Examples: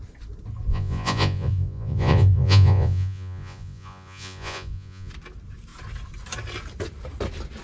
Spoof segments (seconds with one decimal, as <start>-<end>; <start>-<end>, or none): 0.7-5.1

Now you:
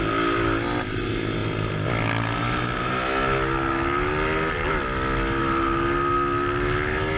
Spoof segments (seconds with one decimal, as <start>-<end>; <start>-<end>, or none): none

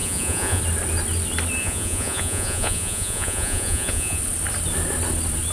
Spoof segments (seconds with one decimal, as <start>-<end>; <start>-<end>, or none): 0.0-0.6; 1.6-4.2